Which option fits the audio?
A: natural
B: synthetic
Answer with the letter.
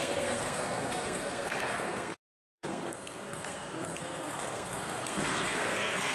B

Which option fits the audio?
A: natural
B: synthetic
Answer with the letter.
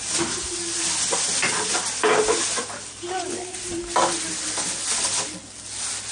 A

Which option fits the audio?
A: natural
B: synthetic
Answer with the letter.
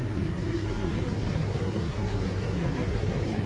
B